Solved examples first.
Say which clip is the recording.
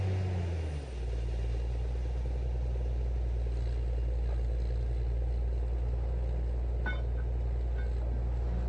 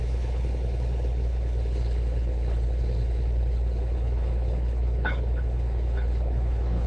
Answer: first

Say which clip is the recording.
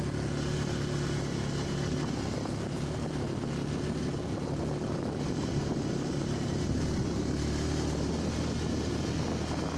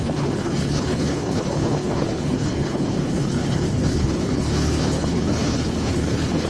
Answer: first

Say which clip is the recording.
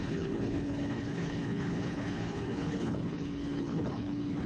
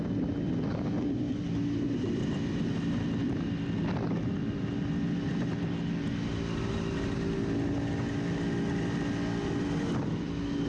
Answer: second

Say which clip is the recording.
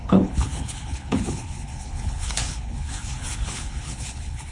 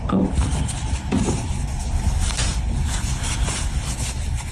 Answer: second